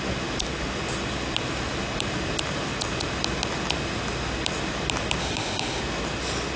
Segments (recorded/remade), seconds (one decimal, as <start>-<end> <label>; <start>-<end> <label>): 0.0-5.2 recorded; 5.2-5.8 remade; 5.8-6.6 recorded